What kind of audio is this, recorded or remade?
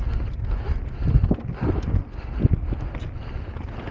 recorded